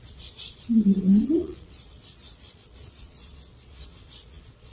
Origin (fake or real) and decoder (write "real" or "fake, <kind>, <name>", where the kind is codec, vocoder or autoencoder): fake, vocoder, Vocos